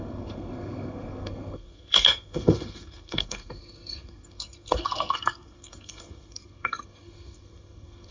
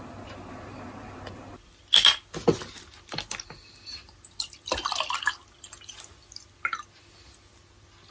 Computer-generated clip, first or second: first